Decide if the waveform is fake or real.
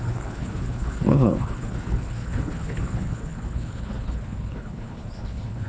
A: fake